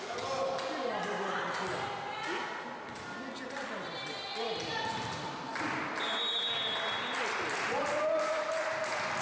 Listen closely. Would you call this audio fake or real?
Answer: real